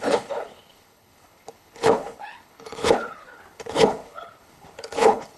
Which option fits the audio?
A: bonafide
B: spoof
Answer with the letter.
B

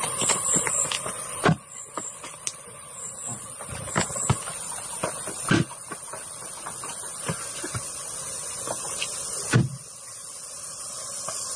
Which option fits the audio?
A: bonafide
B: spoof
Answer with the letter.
A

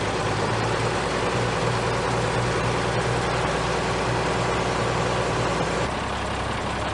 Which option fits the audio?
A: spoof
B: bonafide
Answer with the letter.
B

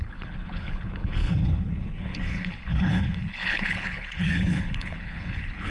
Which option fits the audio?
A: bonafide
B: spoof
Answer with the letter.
B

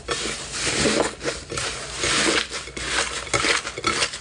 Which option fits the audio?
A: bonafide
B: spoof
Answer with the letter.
A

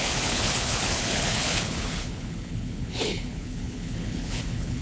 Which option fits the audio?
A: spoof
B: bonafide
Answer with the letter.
A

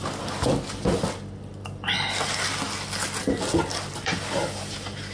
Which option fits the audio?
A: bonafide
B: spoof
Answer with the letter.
A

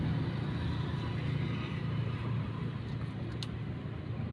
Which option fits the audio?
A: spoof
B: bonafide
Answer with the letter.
B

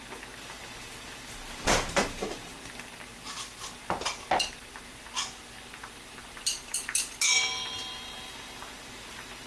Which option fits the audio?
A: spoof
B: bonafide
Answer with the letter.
B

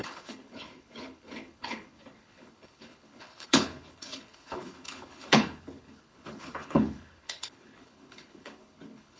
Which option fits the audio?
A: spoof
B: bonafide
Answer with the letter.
A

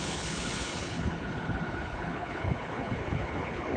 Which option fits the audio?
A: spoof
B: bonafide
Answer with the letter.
A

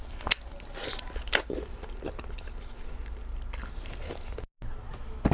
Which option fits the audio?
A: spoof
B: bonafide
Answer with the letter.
B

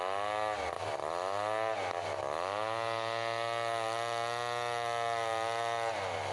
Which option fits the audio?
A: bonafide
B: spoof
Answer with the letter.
A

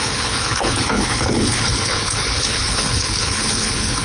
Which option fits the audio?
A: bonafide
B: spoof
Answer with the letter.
B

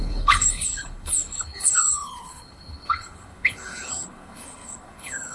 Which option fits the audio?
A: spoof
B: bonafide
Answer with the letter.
A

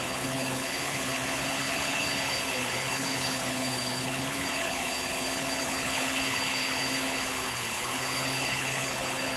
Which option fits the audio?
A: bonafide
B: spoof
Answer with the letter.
B